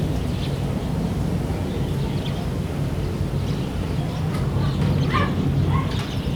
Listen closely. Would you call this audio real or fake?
real